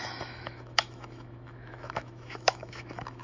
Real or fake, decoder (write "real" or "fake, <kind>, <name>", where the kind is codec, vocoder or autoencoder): fake, autoencoder, DAC-VAE